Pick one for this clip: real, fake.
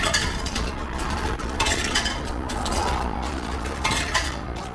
fake